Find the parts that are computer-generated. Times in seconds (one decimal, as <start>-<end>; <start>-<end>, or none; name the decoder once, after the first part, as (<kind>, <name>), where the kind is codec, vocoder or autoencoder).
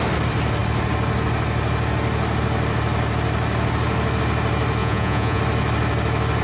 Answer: 4.8-5.4 (vocoder, Vocos)